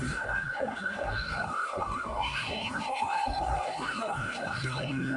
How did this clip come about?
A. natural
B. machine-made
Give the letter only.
B